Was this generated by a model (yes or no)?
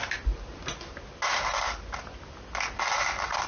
no